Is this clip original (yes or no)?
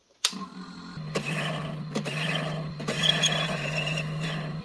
yes